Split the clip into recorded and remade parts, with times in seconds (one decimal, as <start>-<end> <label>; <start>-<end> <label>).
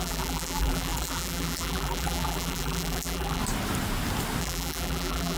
0.0-3.4 remade; 3.4-4.4 recorded; 4.4-5.4 remade